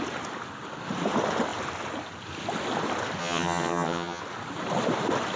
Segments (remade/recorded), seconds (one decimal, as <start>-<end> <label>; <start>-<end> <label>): 0.0-3.2 recorded; 3.2-4.2 remade; 4.2-5.4 recorded